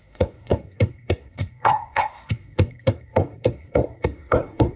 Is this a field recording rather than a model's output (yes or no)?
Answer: no